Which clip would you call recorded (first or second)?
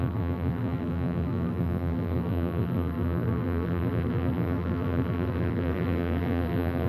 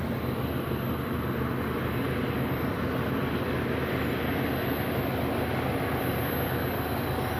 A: second